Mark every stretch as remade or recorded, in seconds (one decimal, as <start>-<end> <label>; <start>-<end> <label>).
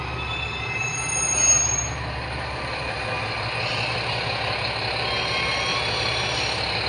0.0-5.7 recorded; 5.7-6.9 remade